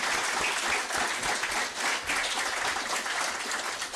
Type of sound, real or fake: real